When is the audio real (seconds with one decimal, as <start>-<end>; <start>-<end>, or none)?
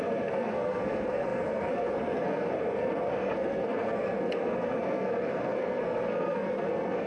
none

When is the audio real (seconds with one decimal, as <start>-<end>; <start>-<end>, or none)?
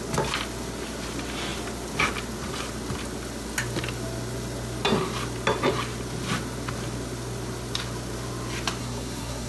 0.0-8.8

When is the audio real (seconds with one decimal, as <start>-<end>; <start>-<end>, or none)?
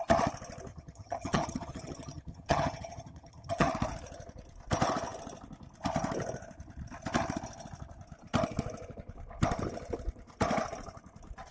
0.0-0.7; 3.7-11.5